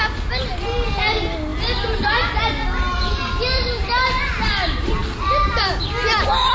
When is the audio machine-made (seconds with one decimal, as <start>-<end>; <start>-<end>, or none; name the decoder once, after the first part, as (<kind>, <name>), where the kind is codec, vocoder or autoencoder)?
none